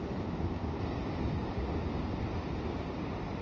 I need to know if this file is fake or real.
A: real